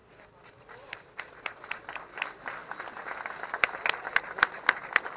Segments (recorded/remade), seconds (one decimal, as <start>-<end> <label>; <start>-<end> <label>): 0.0-1.9 remade; 1.9-2.6 recorded; 2.6-4.6 remade; 4.6-5.2 recorded